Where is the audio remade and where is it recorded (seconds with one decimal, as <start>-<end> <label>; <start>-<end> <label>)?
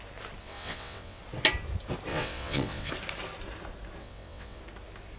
0.0-0.4 recorded; 0.4-1.2 remade; 1.2-2.1 recorded; 2.1-2.9 remade; 2.9-4.0 recorded; 4.0-4.6 remade; 4.6-5.2 recorded